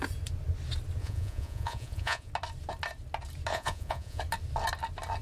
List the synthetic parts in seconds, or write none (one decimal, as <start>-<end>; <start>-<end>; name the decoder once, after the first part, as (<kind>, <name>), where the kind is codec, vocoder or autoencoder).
1.0-2.3 (vocoder, Vocos); 3.5-4.2